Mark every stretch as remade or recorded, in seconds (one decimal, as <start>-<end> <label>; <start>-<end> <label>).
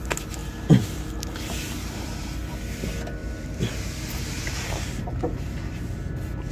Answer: 0.0-0.4 recorded; 0.4-2.3 remade; 2.3-3.2 recorded; 3.2-6.1 remade; 6.1-6.5 recorded